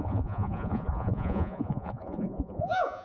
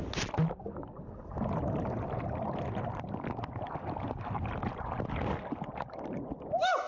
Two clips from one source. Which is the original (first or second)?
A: second